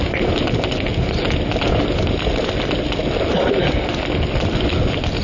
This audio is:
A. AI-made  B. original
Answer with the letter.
B